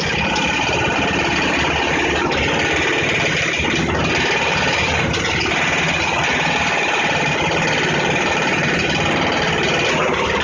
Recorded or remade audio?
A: recorded